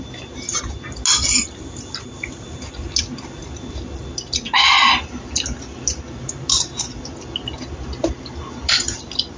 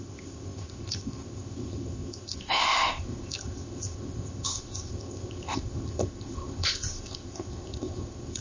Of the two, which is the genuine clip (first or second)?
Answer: first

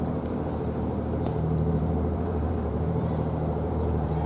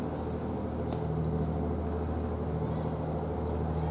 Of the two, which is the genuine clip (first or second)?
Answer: second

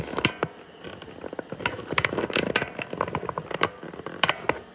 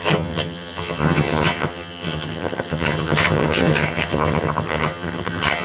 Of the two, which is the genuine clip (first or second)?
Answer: first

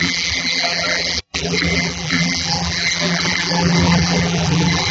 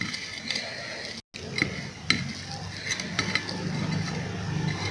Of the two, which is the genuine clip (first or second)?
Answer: second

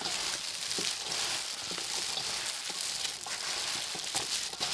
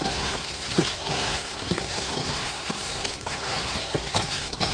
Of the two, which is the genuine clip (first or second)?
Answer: first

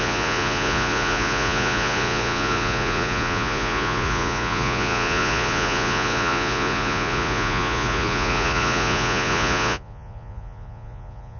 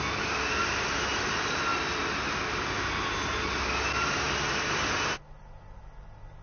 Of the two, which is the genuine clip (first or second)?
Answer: second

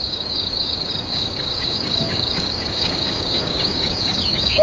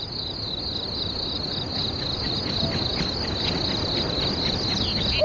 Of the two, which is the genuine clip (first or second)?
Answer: second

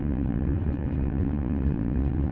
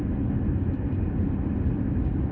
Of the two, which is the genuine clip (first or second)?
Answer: second